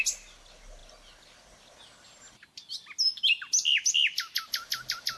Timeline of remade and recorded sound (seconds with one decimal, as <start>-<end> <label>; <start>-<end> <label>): 0.0-5.2 recorded